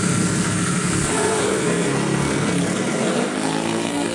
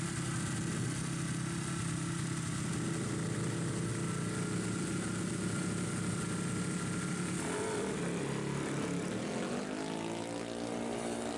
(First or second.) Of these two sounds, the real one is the second